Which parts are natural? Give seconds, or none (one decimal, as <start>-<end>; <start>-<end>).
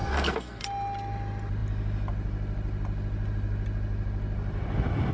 0.6-5.1